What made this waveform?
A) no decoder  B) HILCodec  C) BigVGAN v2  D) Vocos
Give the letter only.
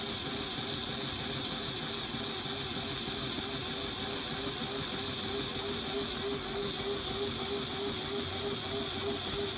A